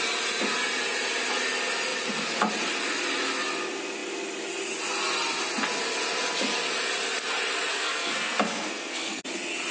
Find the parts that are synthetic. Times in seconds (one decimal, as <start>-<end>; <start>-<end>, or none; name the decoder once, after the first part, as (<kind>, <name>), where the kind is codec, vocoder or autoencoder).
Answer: 7.7-9.2 (codec, SNAC)